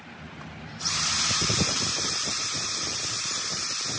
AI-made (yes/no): yes